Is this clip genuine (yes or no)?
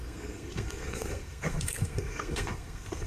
no